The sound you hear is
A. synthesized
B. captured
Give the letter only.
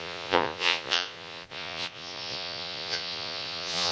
A